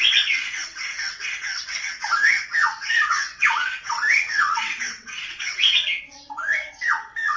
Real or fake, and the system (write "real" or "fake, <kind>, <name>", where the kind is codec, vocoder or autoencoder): fake, vocoder, WaveNeXt